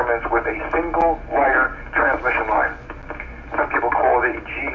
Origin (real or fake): real